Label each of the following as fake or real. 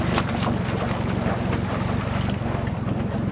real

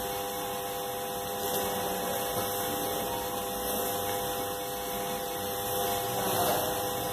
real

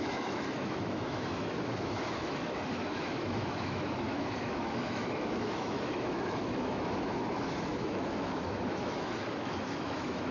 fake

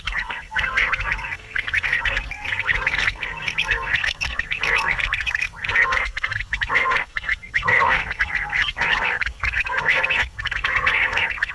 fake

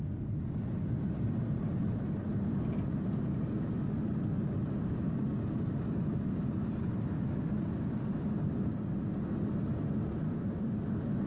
real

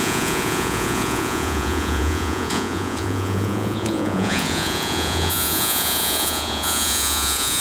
fake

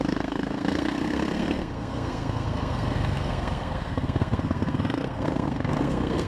fake